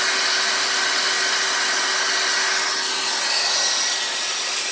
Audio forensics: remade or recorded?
recorded